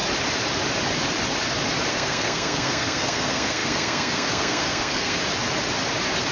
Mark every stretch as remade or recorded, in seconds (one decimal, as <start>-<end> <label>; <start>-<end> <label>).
0.0-1.9 recorded; 1.9-5.2 remade; 5.2-6.3 recorded